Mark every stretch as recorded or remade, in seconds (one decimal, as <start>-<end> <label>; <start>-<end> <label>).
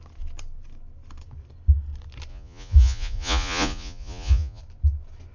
0.0-2.3 recorded; 2.3-4.6 remade; 4.6-5.3 recorded